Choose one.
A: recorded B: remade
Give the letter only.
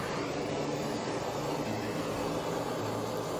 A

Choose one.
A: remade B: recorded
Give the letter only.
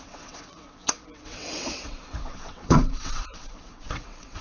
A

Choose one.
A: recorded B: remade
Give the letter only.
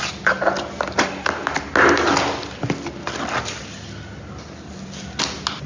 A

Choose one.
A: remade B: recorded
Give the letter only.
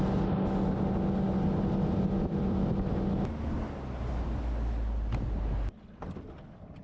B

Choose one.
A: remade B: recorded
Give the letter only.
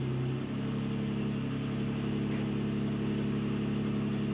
B